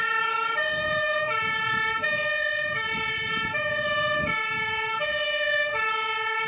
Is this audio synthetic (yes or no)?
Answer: yes